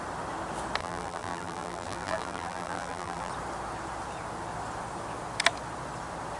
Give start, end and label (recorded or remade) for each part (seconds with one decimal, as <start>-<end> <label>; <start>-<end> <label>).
0.0-0.8 recorded; 0.8-3.3 remade; 3.3-6.4 recorded